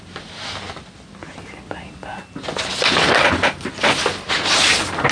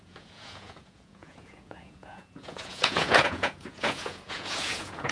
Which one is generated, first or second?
second